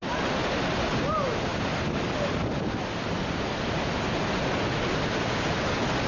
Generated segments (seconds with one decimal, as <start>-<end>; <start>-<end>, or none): none